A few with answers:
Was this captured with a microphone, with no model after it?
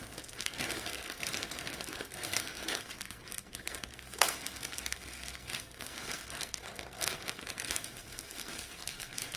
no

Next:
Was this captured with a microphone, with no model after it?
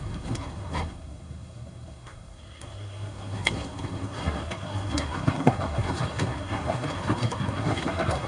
no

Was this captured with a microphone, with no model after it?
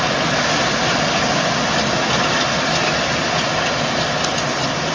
yes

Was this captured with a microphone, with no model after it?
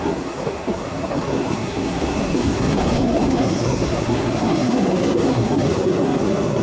no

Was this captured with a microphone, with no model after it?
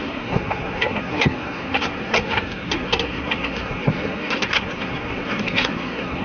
no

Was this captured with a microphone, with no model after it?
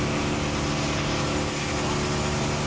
yes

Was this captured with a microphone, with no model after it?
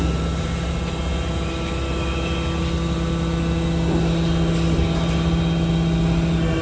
yes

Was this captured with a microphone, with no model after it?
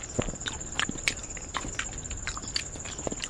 yes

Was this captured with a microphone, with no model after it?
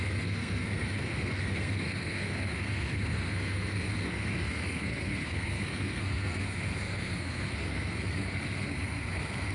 no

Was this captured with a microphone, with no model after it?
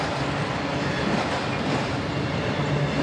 yes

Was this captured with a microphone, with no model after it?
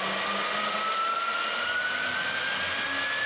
yes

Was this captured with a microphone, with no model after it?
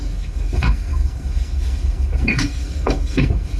no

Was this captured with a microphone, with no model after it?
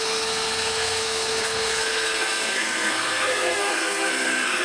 no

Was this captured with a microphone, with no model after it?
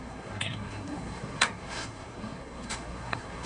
no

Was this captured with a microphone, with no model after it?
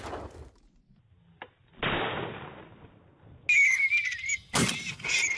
yes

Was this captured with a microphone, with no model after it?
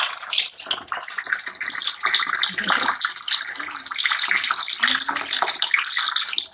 yes